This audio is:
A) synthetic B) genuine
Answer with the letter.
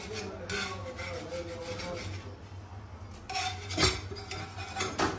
B